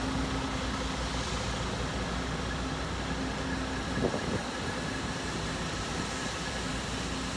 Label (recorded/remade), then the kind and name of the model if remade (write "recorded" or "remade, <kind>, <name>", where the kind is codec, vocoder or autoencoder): recorded